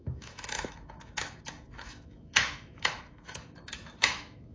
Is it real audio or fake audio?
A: fake